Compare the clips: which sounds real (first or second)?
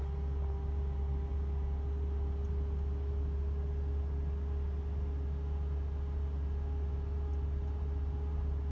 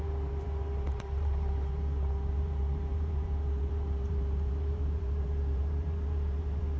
first